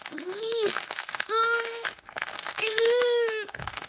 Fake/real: fake